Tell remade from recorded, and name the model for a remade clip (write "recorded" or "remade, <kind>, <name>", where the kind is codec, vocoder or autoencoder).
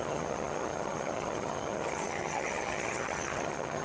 remade, vocoder, HiFi-GAN